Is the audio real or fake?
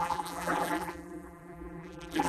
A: fake